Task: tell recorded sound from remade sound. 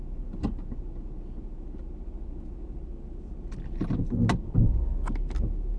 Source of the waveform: recorded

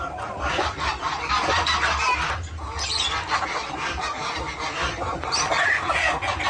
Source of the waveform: recorded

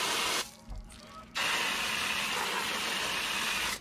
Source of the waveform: recorded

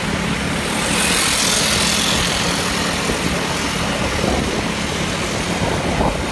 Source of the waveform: recorded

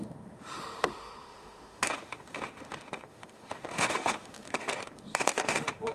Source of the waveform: remade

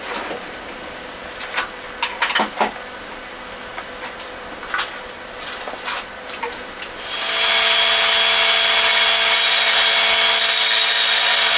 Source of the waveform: recorded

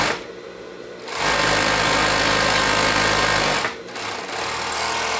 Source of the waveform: recorded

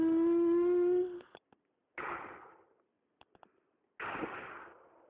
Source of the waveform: recorded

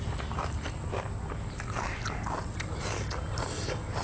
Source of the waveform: recorded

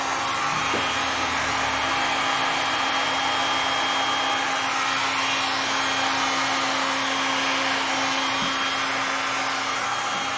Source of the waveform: recorded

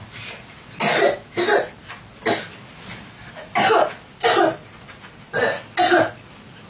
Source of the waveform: recorded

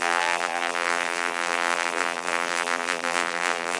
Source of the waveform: remade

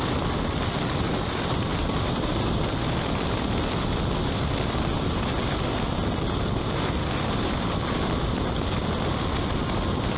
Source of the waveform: recorded